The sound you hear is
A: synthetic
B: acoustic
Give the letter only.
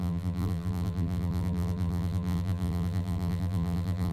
A